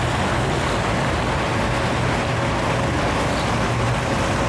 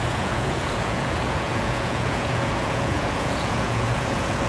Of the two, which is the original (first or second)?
first